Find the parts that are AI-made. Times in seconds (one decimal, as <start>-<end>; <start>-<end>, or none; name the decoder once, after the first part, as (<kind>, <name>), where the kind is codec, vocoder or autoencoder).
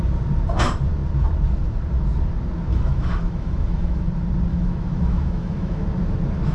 2.7-4.1 (autoencoder, DAC-VAE); 4.5-5.8